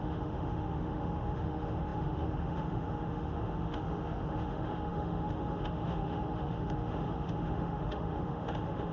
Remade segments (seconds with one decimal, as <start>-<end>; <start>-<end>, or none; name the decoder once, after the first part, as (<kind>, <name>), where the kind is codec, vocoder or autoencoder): 0.0-8.9 (autoencoder, DAC-VAE)

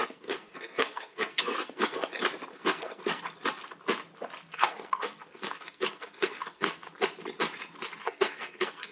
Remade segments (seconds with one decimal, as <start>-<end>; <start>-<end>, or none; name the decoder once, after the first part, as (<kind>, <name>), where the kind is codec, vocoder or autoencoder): 0.0-2.1 (codec, SNAC); 2.5-3.2; 4.5-6.9; 8.0-8.9

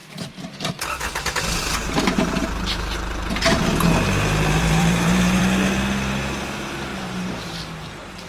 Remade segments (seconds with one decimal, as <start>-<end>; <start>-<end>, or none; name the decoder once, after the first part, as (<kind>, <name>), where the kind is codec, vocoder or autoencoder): 0.0-0.7 (vocoder, BigVGAN v2); 2.1-5.4; 6.9-7.6

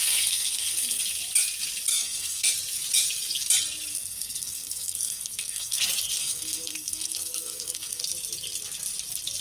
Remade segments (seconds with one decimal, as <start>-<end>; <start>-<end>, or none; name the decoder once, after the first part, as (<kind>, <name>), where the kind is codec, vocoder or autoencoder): 0.0-1.0 (codec, SNAC); 1.9-2.5; 3.9-5.8; 6.2-8.0

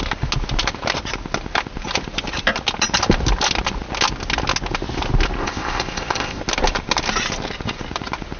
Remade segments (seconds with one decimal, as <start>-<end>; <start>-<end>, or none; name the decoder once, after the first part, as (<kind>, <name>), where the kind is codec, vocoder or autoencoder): 5.4-6.4 (codec, ZipCodec)

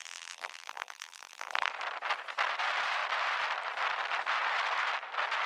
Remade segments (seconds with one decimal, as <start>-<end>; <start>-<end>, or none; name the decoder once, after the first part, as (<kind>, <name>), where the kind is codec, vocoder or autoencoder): 0.0-1.7 (vocoder, BigVGAN v2)

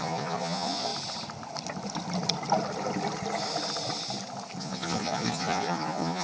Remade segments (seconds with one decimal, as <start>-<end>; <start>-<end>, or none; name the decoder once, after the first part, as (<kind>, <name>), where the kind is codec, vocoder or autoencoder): 0.0-0.9 (vocoder, Vocos); 4.6-6.2

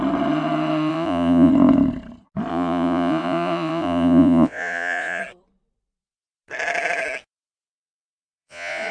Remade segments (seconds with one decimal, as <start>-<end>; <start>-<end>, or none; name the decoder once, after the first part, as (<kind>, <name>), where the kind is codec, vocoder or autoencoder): 0.9-1.5 (vocoder, Vocos); 2.5-5.2; 7.7-8.9